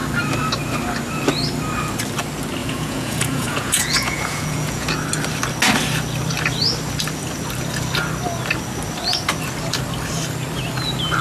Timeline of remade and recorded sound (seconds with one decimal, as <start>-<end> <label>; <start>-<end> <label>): 0.0-2.6 recorded; 2.6-4.9 remade; 4.9-11.2 recorded